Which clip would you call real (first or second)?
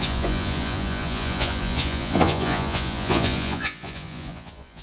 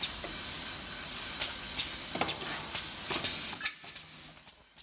second